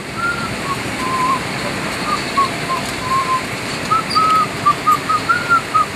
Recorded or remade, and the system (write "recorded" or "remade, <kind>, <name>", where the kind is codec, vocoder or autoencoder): remade, vocoder, BigVGAN v2